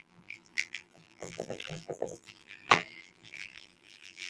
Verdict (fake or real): fake